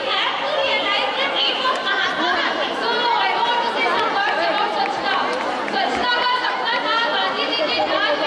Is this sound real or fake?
real